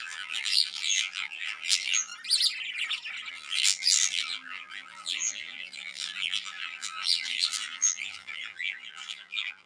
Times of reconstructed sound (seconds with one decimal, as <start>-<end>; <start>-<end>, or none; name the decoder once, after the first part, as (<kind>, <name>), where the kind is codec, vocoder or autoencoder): 0.0-2.1 (vocoder, BigVGAN v2); 3.3-9.7